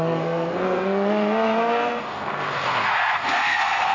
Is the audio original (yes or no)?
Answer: no